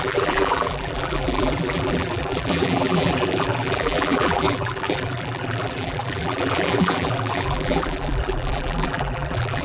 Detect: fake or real fake